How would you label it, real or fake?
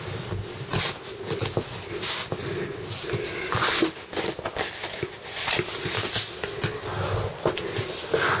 real